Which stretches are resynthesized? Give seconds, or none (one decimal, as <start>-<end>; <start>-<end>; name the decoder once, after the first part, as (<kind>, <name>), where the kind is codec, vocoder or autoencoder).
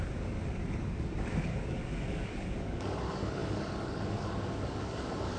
0.0-5.4 (codec, DAC)